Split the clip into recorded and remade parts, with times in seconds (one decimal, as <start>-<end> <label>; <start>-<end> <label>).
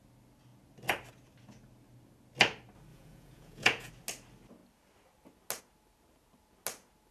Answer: 0.0-2.9 recorded; 2.9-3.9 remade; 3.9-7.1 recorded